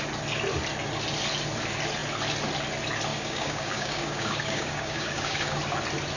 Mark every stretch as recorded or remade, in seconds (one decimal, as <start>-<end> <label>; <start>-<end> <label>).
0.0-3.1 recorded; 3.1-5.6 remade; 5.6-6.2 recorded

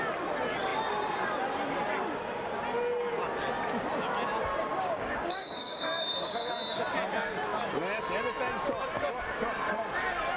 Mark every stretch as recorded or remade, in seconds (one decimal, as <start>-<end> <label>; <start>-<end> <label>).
0.0-4.7 recorded; 4.7-6.5 remade; 6.5-10.4 recorded

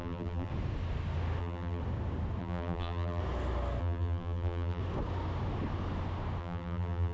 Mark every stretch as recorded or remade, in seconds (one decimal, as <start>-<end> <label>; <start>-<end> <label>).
0.0-0.5 remade; 0.5-1.4 recorded; 1.4-1.8 remade; 1.8-2.4 recorded; 2.4-3.2 remade; 3.2-3.8 recorded; 3.8-4.8 remade; 4.8-6.4 recorded; 6.4-7.1 remade

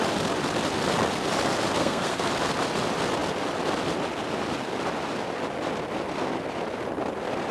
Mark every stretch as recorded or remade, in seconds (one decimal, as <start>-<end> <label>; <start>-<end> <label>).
0.0-1.8 recorded; 1.8-2.3 remade; 2.3-7.5 recorded

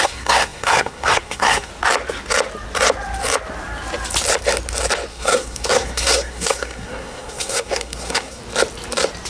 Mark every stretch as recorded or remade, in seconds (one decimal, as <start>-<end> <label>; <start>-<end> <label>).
0.0-1.7 remade; 1.7-5.1 recorded; 5.1-8.4 remade; 8.4-9.3 recorded

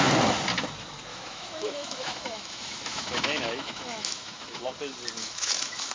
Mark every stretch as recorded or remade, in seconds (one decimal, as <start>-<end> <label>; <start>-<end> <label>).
0.0-1.1 recorded; 1.1-4.6 remade; 4.6-5.2 recorded; 5.2-5.9 remade

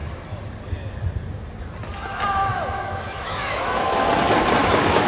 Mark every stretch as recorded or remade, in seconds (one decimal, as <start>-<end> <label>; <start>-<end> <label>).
0.0-2.5 recorded; 2.5-4.1 remade; 4.1-4.6 recorded; 4.6-5.1 remade

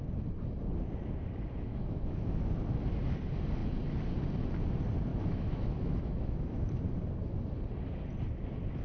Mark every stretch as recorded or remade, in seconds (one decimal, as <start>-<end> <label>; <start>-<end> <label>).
0.0-1.7 recorded; 1.7-2.4 remade; 2.4-5.1 recorded; 5.1-6.8 remade; 6.8-8.8 recorded